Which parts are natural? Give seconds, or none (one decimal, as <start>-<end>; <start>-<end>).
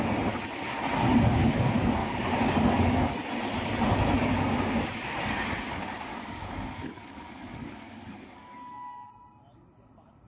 0.0-2.0; 2.9-5.7; 9.1-10.3